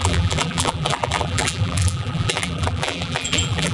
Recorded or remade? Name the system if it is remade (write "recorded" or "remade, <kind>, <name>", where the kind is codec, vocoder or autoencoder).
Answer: remade, vocoder, BigVGAN v2